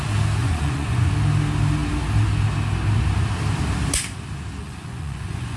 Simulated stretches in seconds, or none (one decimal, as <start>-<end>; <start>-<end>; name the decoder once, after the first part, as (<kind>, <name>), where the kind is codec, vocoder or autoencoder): 0.4-1.1 (vocoder, Vocos); 4.6-5.6